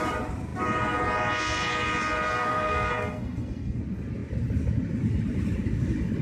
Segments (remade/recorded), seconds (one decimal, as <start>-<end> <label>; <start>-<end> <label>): 0.0-2.4 recorded; 2.4-3.8 remade; 3.8-6.2 recorded